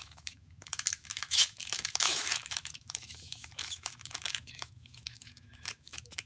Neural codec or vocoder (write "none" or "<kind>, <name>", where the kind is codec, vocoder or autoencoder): autoencoder, DAC-VAE